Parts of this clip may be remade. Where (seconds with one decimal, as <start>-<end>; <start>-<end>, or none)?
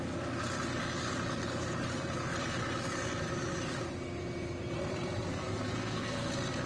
5.3-6.3